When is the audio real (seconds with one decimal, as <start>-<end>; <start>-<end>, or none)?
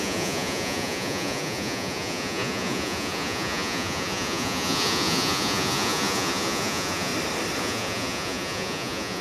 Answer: 7.1-7.6